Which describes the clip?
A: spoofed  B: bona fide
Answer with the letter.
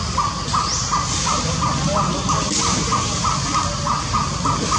B